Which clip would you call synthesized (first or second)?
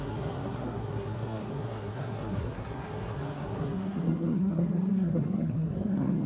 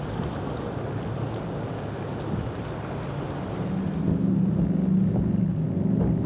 first